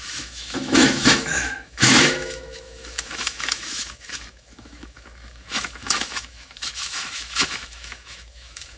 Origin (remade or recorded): remade